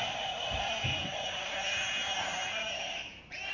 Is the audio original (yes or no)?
yes